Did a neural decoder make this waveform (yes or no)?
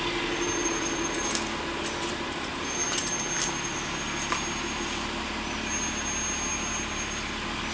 no